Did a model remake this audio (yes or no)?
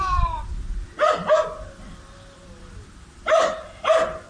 no